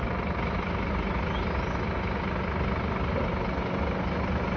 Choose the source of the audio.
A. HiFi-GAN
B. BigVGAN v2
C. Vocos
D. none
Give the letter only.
D